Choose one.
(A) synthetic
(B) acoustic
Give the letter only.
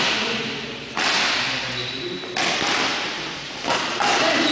B